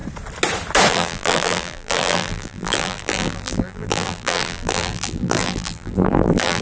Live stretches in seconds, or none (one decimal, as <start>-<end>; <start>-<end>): 0.0-0.9